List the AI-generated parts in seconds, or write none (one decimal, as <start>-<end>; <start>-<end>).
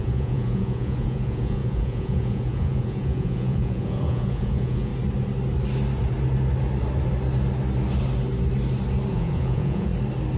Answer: 0.0-4.9; 9.1-9.9